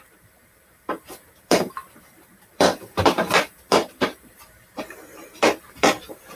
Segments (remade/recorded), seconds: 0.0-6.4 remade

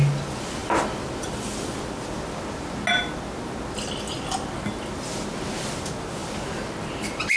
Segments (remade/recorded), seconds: 0.0-7.4 recorded

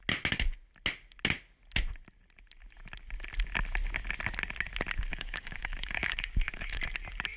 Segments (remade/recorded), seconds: 0.0-5.1 recorded; 5.1-6.8 remade; 6.8-7.4 recorded

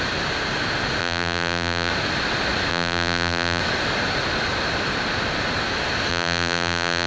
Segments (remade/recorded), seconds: 0.0-1.0 recorded; 1.0-1.9 remade; 1.9-2.7 recorded; 2.7-3.6 remade; 3.6-6.1 recorded; 6.1-7.1 remade

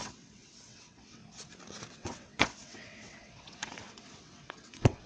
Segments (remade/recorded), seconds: 0.0-1.2 remade; 1.2-1.9 recorded; 1.9-5.1 remade

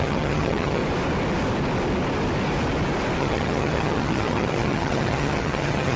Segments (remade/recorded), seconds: 0.0-0.8 remade; 0.8-3.2 recorded; 3.2-6.0 remade

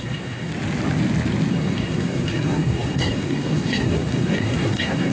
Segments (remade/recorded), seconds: 0.0-0.5 remade; 0.5-1.5 recorded; 1.5-5.1 remade